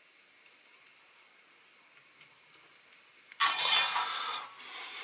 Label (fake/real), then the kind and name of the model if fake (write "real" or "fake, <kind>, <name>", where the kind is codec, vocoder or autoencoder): real